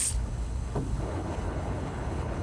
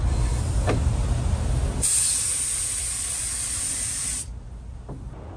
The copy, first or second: first